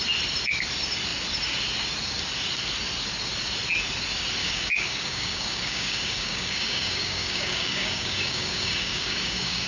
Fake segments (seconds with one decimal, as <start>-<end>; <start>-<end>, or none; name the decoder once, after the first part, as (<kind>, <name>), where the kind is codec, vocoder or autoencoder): 4.4-9.7 (codec, DAC)